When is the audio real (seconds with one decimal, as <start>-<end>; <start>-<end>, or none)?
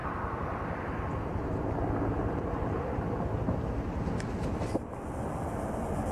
0.0-6.1